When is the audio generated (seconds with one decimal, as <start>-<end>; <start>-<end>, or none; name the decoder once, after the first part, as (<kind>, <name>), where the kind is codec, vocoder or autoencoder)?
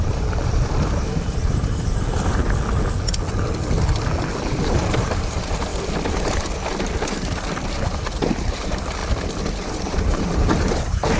0.0-2.4 (vocoder, BigVGAN v2); 4.7-5.7; 7.7-9.0; 9.5-11.2